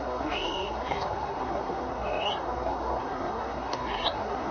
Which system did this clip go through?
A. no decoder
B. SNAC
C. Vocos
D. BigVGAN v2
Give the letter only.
B